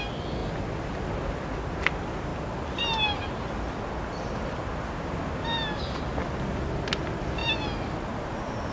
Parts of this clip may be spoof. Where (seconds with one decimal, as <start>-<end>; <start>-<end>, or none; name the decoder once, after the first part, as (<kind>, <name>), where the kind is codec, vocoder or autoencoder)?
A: none